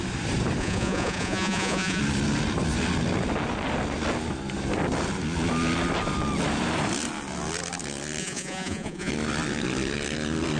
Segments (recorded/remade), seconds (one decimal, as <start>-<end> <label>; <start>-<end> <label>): 0.0-0.6 recorded; 0.6-2.0 remade; 2.0-8.2 recorded; 8.2-9.1 remade; 9.1-10.6 recorded